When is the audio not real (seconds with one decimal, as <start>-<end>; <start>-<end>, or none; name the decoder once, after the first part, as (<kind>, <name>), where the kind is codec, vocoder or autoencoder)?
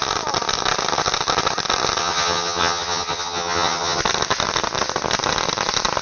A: 2.0-4.0 (vocoder, HiFi-GAN)